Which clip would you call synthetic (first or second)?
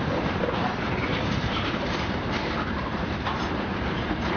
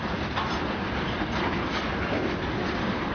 first